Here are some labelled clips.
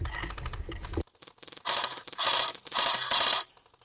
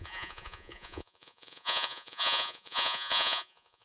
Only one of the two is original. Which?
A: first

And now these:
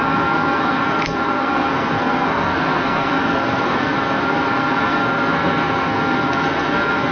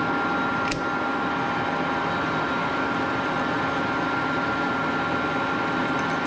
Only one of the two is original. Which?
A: second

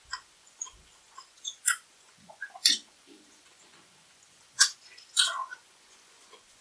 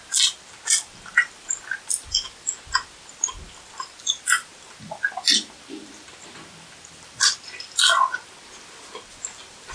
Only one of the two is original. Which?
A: second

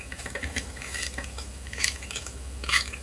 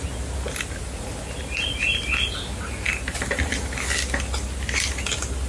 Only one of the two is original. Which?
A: second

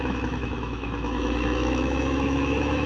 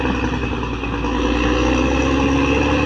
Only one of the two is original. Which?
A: second